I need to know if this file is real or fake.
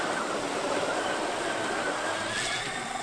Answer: real